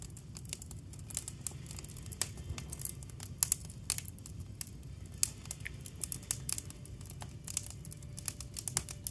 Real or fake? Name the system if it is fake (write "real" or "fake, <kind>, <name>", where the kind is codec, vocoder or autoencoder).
real